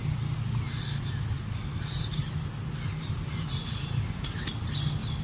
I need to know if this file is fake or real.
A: real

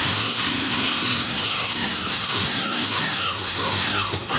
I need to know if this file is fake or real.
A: fake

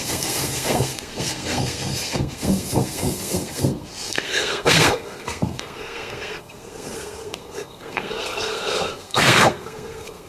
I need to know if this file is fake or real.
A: fake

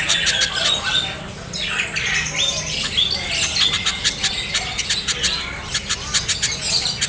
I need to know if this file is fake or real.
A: real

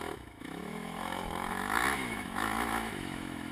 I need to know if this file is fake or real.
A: fake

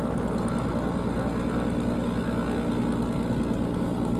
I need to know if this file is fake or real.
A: real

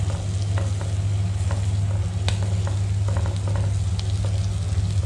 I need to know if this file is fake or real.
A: real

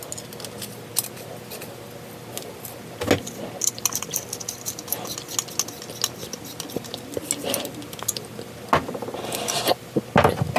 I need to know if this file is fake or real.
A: real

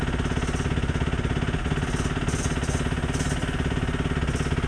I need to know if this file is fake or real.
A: real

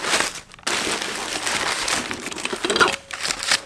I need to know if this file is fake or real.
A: real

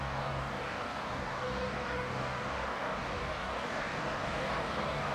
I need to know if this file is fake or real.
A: fake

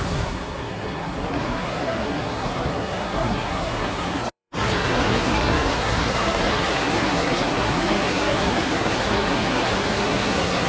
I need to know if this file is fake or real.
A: fake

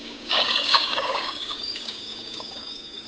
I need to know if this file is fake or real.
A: fake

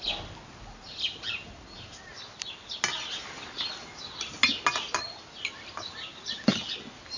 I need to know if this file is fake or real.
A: real